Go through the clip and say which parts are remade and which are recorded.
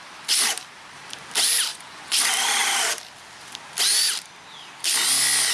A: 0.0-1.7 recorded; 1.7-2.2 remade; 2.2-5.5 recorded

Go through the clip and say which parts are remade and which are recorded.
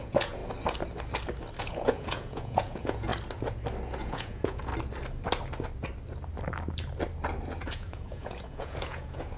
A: 0.0-0.4 remade; 0.4-1.6 recorded; 1.6-3.1 remade; 3.1-4.0 recorded; 4.0-4.7 remade; 4.7-7.6 recorded; 7.6-9.4 remade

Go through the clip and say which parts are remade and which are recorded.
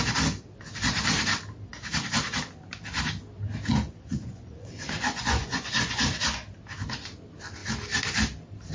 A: 0.0-3.7 recorded; 3.7-6.0 remade; 6.0-8.7 recorded